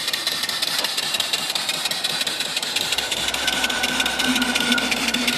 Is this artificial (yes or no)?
yes